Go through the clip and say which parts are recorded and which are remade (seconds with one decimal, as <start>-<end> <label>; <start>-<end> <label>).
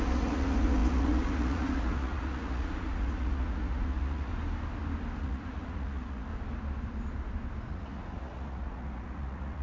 0.0-4.3 remade; 4.3-5.2 recorded; 5.2-6.3 remade; 6.3-7.7 recorded; 7.7-9.6 remade